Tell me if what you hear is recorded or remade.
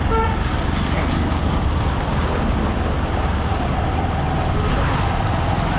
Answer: recorded